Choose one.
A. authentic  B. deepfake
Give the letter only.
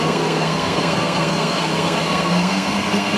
B